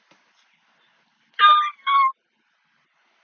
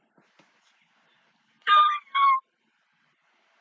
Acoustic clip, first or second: first